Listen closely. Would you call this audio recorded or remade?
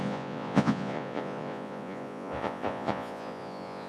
remade